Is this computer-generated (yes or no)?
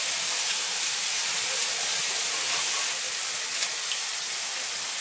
no